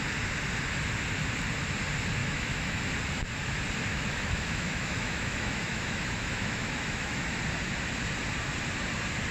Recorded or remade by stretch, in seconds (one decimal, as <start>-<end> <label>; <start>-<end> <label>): 0.0-2.2 recorded; 2.2-2.9 remade; 2.9-3.9 recorded; 3.9-7.4 remade; 7.4-9.3 recorded